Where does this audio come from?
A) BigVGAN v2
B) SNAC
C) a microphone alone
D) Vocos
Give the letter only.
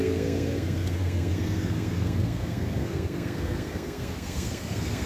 B